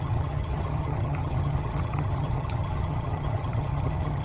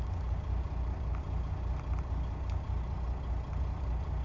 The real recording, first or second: second